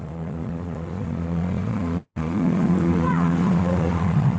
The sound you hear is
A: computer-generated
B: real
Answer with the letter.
A